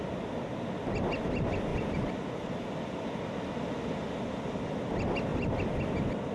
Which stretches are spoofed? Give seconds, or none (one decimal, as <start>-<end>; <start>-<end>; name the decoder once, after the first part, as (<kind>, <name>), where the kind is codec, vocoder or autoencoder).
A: none